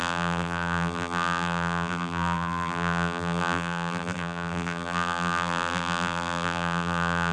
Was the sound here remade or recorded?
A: remade